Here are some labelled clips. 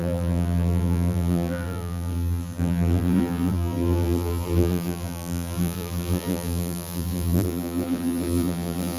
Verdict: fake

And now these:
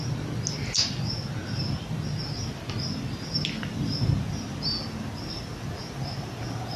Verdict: real